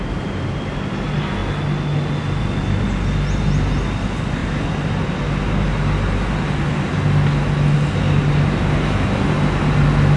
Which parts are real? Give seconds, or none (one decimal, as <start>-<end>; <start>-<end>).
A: 0.0-10.2